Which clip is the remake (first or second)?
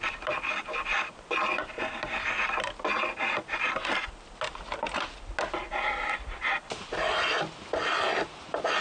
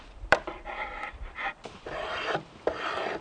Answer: second